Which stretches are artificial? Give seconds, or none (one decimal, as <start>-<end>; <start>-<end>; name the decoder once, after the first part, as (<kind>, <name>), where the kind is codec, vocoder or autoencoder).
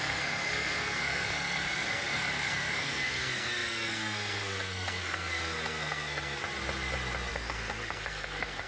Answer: 0.0-6.4 (codec, SNAC); 7.3-8.7